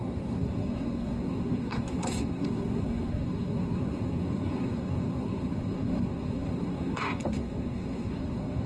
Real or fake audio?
fake